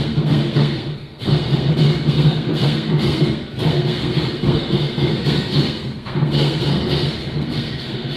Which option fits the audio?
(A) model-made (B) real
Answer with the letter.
A